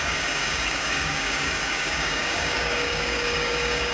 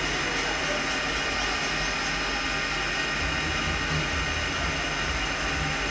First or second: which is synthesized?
first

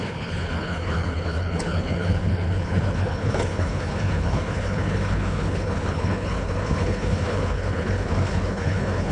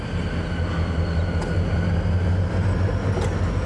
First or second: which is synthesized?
first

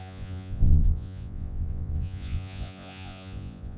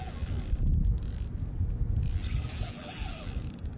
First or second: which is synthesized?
first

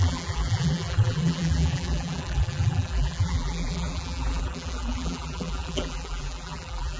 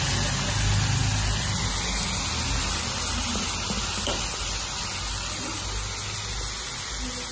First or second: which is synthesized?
first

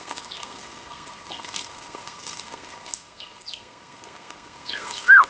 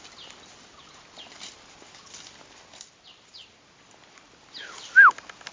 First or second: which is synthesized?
first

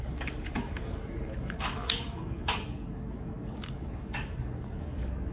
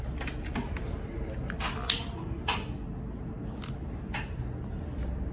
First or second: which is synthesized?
first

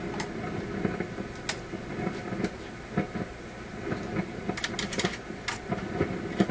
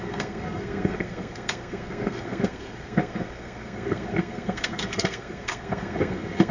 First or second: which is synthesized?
second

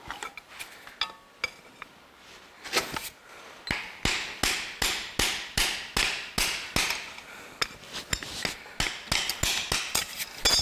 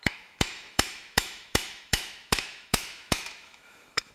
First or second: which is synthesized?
second